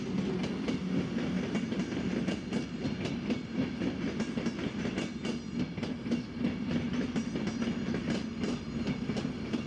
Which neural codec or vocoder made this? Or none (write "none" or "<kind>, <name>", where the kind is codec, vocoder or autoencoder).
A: none